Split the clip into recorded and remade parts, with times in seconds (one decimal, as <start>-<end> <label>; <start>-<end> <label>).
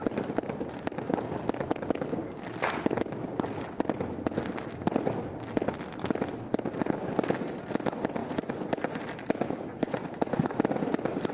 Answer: 0.0-8.2 recorded; 8.2-9.0 remade; 9.0-9.7 recorded; 9.7-10.4 remade; 10.4-11.3 recorded